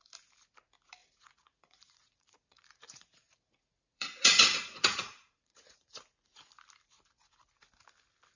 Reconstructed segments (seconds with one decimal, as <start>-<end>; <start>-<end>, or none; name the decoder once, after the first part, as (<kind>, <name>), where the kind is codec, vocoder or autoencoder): 1.0-6.0 (vocoder, Vocos)